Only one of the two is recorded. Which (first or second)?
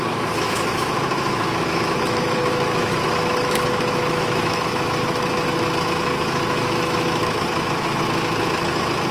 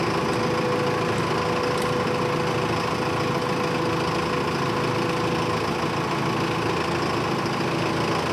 second